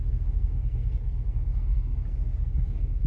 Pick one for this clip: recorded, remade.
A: remade